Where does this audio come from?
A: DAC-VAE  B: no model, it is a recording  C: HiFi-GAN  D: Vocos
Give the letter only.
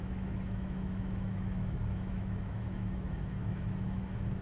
A